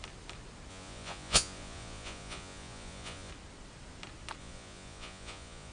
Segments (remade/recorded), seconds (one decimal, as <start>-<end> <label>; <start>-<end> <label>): 0.0-0.7 recorded; 0.7-3.3 remade; 3.3-4.4 recorded; 4.4-5.7 remade